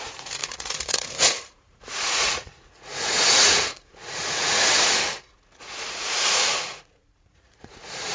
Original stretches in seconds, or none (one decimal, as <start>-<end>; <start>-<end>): none